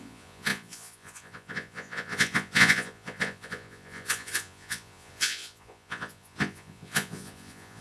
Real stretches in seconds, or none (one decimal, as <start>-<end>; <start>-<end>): none